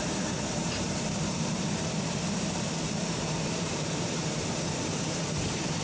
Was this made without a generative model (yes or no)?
no